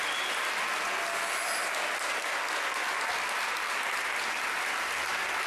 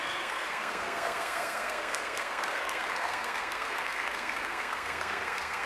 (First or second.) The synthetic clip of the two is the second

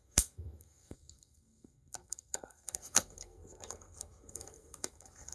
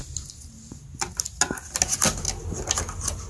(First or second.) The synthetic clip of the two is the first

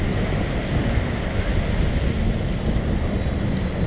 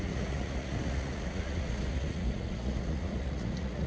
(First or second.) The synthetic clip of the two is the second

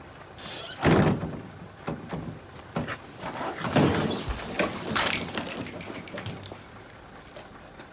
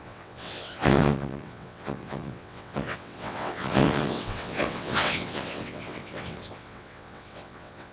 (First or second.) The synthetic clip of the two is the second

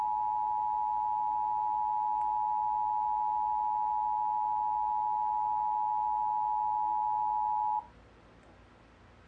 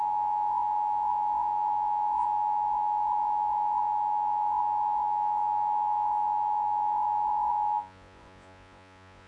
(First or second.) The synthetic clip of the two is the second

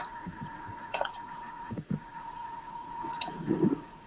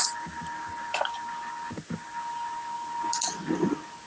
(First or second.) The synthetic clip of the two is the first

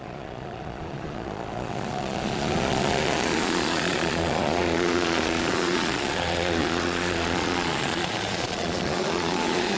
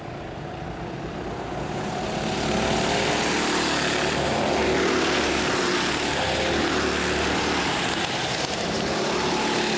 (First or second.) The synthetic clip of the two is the first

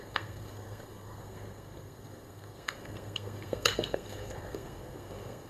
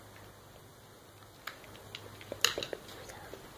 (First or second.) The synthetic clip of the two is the first